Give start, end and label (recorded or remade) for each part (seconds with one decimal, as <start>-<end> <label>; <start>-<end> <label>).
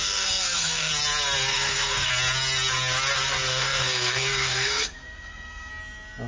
0.0-0.9 remade; 0.9-1.5 recorded; 1.5-2.1 remade; 2.1-3.5 recorded; 3.5-5.7 remade; 5.7-6.3 recorded